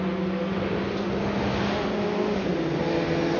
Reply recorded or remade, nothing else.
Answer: recorded